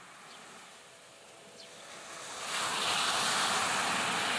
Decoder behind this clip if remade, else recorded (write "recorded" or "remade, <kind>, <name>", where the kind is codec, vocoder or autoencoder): recorded